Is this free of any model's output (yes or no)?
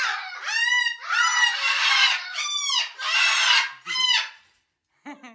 yes